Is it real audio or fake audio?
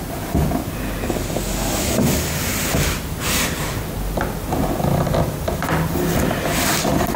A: real